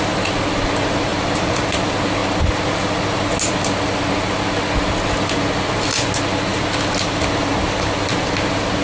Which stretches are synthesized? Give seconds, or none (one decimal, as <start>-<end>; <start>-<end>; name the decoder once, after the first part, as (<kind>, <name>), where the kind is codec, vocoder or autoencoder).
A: 1.1-1.6 (vocoder, BigVGAN v2); 6.5-8.8